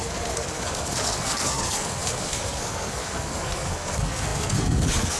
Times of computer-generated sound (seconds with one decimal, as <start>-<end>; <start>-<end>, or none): 0.0-5.2